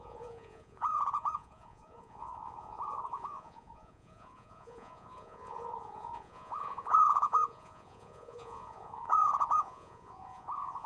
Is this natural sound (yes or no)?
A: no